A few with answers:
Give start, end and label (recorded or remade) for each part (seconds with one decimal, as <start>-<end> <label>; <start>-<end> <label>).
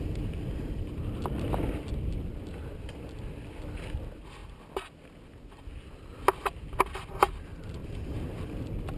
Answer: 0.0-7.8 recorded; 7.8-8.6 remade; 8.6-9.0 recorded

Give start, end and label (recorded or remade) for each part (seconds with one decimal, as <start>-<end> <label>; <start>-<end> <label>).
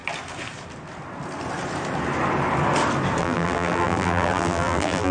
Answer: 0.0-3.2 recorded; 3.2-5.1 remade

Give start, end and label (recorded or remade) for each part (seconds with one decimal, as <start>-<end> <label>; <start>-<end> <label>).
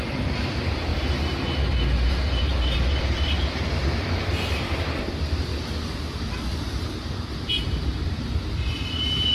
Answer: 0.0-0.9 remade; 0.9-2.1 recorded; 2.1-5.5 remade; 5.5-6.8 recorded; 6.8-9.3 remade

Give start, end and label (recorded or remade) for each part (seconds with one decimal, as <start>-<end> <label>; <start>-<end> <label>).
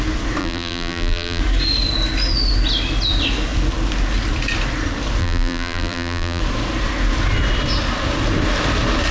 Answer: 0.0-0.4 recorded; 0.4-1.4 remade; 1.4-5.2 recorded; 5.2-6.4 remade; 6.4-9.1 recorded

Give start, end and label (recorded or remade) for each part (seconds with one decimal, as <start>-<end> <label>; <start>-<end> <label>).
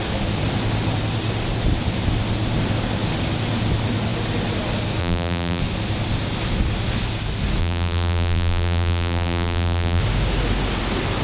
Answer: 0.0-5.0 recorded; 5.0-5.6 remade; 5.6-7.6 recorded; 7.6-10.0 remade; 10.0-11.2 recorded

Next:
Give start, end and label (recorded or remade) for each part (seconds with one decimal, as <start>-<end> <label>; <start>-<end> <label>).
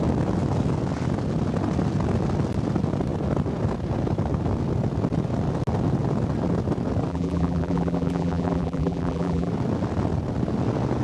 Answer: 0.0-7.1 recorded; 7.1-9.5 remade; 9.5-11.0 recorded